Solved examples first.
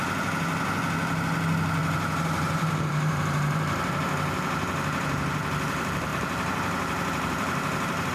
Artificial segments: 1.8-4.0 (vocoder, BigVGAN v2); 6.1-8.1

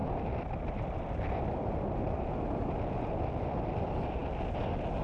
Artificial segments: none